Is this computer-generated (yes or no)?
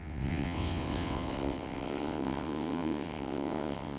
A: yes